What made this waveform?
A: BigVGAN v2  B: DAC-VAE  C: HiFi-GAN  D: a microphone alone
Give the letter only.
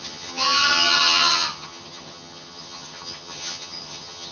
C